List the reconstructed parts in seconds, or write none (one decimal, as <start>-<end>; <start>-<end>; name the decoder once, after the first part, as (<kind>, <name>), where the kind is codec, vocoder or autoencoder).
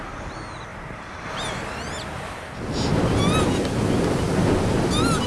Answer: none